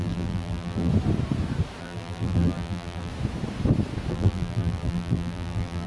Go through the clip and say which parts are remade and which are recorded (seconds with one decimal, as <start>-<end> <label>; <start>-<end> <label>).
0.0-0.9 remade; 0.9-1.8 recorded; 1.8-3.1 remade; 3.1-4.1 recorded; 4.1-5.9 remade

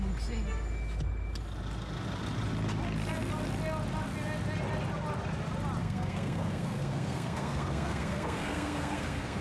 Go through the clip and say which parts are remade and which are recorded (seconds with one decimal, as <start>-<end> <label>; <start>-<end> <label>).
0.0-5.8 recorded; 5.8-9.4 remade